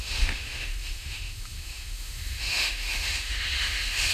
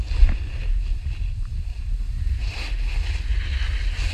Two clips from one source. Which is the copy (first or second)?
first